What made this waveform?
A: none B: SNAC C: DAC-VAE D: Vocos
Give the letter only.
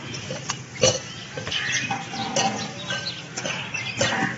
A